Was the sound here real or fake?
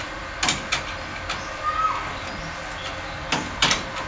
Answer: real